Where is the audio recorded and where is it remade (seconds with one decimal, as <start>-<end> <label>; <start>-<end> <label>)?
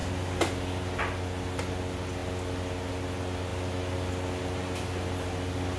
0.0-5.8 recorded